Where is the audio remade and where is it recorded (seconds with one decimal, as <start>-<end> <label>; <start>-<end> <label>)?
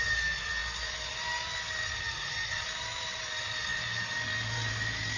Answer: 0.0-5.2 recorded